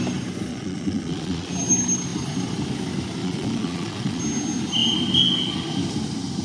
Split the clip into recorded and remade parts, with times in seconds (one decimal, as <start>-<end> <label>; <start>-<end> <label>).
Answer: 0.0-0.5 recorded; 0.5-1.5 remade; 1.5-3.2 recorded; 3.2-4.2 remade; 4.2-6.4 recorded